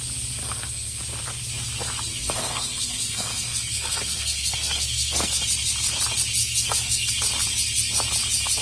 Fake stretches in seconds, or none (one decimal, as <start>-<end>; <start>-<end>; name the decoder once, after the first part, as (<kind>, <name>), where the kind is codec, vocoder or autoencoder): 0.4-1.0 (codec, SNAC); 2.1-5.4; 6.4-7.1